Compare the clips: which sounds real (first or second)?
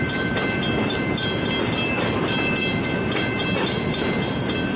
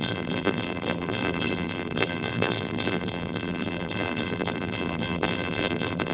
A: first